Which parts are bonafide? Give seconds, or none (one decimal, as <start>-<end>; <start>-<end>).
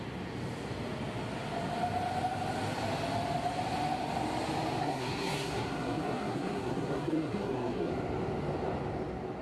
0.0-4.8; 7.9-9.4